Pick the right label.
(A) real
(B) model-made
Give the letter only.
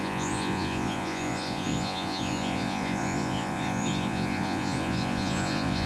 B